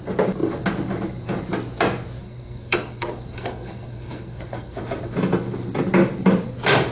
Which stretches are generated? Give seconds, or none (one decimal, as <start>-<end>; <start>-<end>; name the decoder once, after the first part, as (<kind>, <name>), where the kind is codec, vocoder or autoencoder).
2.2-4.8 (codec, SNAC)